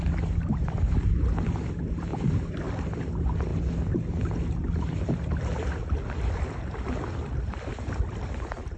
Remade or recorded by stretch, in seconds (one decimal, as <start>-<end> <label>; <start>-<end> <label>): 0.0-8.8 recorded